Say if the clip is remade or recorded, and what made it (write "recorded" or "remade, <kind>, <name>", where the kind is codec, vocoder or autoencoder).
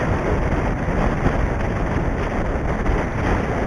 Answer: recorded